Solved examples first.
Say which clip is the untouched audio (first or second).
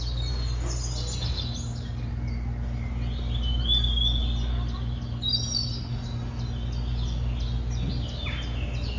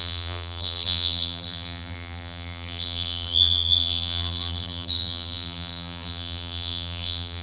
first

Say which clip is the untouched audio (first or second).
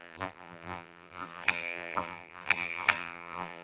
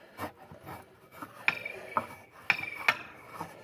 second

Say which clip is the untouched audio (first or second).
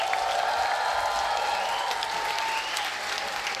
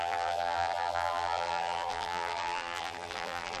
first